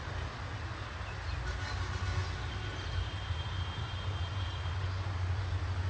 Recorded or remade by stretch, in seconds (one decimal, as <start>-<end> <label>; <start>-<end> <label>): 0.0-2.7 recorded; 2.7-5.4 remade; 5.4-5.9 recorded